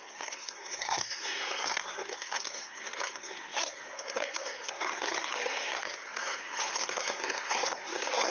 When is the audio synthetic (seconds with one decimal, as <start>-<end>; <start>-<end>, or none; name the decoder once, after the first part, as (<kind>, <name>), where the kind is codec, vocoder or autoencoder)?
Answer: 0.0-8.3 (codec, SNAC)